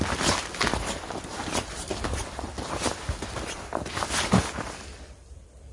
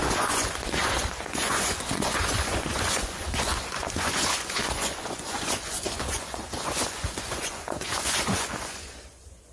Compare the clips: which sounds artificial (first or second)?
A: second